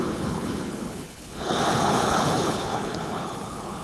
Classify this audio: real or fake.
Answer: fake